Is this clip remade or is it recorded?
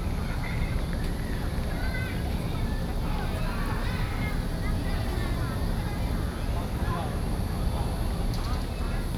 recorded